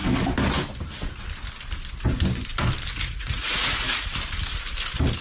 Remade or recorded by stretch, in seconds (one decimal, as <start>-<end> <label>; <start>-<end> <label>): 0.0-2.9 recorded; 2.9-4.1 remade; 4.1-5.2 recorded